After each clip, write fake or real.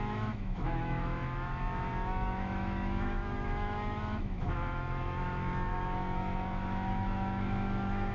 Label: fake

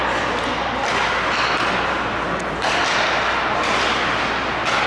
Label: real